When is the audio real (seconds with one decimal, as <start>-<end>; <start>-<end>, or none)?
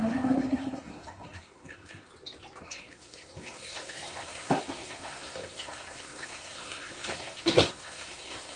2.1-2.6